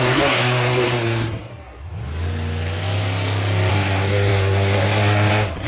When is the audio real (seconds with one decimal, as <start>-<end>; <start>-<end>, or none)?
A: 1.5-3.7